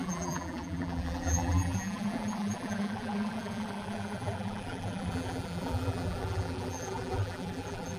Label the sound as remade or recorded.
remade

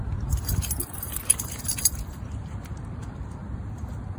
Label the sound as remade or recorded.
remade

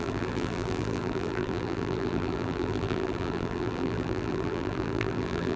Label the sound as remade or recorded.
remade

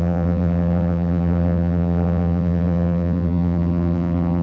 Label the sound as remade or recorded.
remade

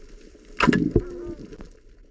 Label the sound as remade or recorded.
recorded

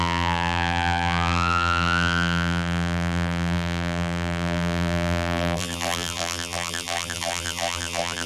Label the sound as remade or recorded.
remade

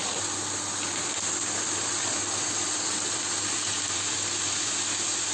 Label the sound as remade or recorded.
remade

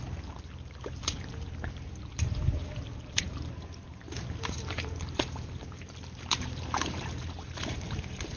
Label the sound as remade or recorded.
remade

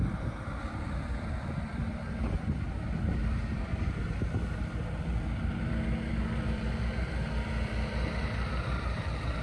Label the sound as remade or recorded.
remade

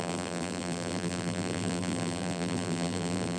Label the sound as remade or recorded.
remade